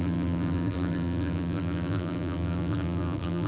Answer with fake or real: fake